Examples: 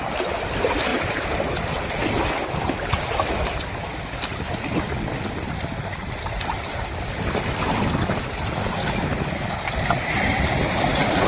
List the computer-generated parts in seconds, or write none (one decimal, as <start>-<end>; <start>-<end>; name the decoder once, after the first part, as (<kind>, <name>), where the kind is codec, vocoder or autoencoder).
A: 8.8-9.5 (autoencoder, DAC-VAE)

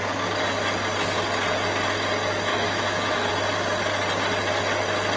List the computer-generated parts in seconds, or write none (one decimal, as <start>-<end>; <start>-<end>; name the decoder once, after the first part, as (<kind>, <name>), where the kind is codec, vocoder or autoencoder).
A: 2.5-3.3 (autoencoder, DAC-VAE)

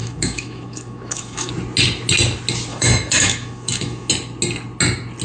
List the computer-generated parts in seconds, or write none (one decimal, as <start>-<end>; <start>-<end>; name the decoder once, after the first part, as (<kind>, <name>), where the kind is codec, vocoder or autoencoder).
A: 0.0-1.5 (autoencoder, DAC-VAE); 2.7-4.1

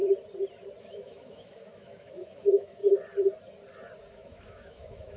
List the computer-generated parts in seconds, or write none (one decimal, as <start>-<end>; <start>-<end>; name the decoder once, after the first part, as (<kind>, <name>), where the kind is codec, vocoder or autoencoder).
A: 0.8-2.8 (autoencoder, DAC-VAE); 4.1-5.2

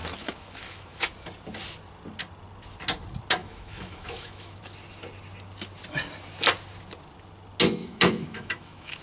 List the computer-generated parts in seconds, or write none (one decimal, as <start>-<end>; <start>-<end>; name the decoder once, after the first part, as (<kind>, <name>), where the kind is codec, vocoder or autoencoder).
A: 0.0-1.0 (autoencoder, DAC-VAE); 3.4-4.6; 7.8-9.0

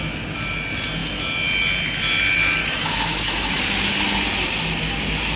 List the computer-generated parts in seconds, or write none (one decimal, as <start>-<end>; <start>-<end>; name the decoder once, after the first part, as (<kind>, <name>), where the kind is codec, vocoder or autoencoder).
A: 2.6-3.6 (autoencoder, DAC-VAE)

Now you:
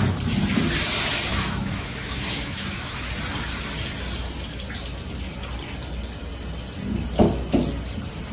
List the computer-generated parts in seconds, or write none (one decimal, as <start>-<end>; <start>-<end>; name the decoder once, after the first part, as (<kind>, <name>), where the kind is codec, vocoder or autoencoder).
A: 1.3-3.1 (autoencoder, DAC-VAE)

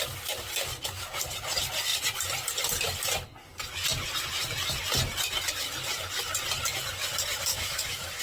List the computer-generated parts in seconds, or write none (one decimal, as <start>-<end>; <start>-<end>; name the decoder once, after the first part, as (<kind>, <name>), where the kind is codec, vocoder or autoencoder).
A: 7.5-8.2 (autoencoder, DAC-VAE)